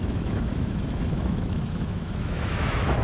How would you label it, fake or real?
fake